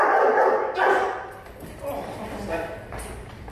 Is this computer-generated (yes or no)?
yes